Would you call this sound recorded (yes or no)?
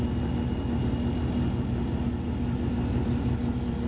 yes